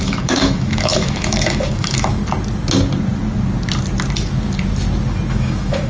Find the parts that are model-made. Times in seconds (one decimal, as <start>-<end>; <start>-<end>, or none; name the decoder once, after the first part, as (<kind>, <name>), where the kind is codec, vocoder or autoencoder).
0.0-2.2 (autoencoder, DAC-VAE); 5.3-5.9

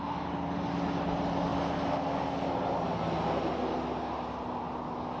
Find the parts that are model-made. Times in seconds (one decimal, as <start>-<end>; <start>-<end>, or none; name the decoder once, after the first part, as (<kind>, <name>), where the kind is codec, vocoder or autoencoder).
none